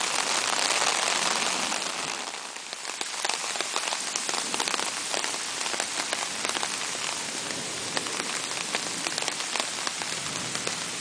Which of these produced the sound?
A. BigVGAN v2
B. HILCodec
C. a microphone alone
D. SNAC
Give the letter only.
C